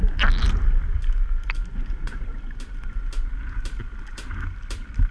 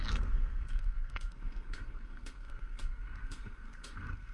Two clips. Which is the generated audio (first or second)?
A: second